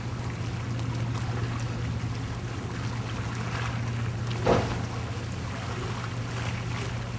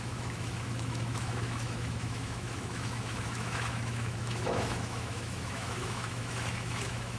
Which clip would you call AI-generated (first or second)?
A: second